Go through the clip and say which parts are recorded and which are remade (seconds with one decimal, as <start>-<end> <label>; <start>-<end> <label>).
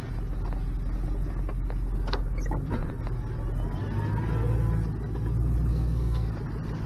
0.0-5.7 recorded; 5.7-6.3 remade; 6.3-6.9 recorded